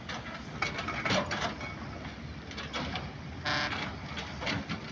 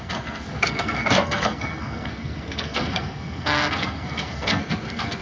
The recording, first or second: first